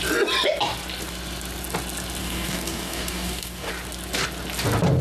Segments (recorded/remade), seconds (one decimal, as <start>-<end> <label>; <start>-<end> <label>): 0.0-2.2 recorded; 2.2-3.7 remade; 3.7-5.0 recorded